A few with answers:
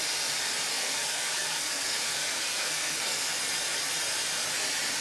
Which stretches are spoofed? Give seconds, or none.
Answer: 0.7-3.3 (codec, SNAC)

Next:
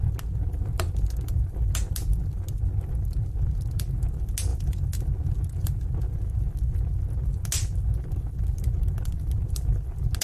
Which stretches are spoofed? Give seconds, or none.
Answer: none

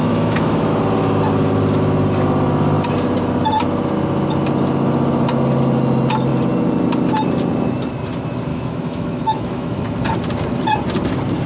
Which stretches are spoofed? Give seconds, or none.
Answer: 0.0-0.7 (autoencoder, DAC-VAE); 8.5-9.8